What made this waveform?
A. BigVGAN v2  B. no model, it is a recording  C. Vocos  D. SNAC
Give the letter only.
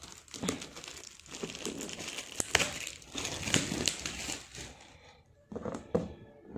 B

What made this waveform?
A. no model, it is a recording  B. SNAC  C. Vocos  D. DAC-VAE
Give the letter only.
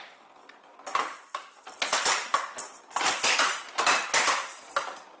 A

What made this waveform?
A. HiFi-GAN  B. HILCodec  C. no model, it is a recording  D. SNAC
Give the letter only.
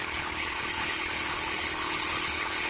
B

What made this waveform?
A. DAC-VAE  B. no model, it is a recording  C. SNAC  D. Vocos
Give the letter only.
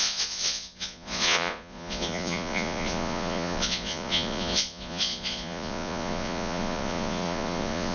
D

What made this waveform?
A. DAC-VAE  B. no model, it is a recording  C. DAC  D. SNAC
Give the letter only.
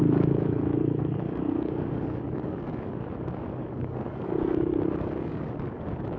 C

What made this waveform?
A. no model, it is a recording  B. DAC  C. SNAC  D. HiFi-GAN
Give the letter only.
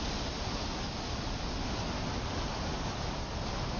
A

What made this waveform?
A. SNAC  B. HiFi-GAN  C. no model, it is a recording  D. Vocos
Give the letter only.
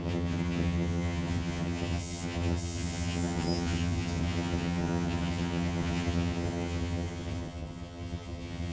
B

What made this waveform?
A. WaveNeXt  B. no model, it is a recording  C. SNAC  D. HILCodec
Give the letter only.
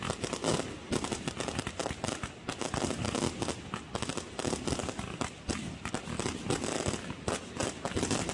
B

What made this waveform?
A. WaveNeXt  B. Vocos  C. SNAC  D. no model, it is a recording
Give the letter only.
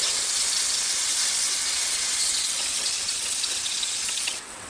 A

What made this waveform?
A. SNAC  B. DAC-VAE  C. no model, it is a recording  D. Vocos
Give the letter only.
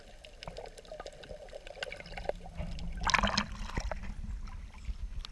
C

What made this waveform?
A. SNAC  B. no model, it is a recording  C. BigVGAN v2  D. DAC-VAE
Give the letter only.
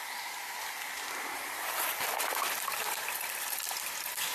C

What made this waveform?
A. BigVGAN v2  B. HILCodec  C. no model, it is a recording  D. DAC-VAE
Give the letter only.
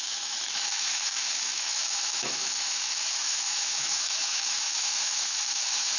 D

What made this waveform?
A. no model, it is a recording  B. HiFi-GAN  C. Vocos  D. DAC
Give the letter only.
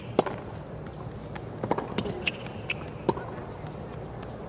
A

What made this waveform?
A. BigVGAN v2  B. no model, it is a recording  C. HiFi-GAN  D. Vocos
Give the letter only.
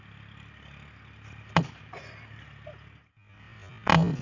B